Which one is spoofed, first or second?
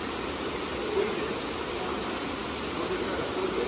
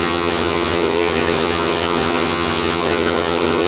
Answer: second